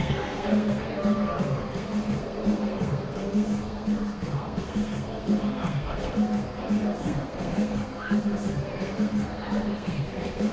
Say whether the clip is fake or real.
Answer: fake